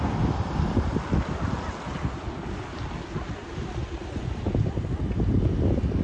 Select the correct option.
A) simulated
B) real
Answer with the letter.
B